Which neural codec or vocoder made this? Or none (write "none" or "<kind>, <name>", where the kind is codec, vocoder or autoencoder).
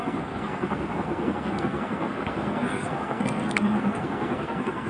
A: codec, SNAC